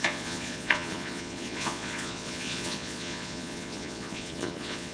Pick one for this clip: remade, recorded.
remade